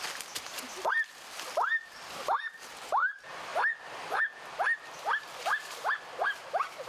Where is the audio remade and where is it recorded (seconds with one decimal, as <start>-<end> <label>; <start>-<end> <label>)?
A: 0.0-6.9 recorded